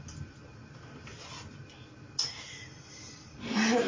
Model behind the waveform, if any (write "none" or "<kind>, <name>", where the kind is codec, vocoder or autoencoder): none